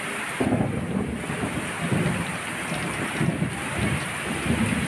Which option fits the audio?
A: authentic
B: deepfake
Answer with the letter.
A